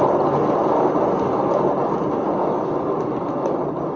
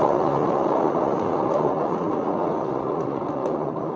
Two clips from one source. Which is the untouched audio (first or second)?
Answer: first